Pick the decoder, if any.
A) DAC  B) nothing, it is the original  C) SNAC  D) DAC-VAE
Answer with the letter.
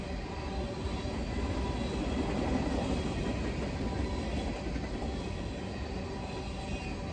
B